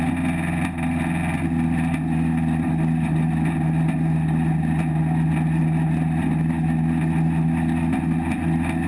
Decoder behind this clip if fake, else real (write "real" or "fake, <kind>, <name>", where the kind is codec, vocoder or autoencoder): real